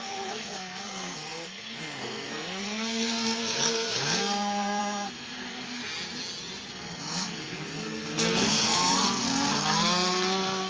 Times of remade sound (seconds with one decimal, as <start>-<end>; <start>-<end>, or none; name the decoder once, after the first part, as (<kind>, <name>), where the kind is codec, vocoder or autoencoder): 0.0-5.8 (codec, SNAC); 6.7-10.7